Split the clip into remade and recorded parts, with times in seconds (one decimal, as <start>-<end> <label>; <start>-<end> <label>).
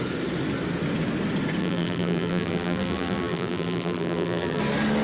0.0-1.6 recorded; 1.6-4.6 remade; 4.6-5.0 recorded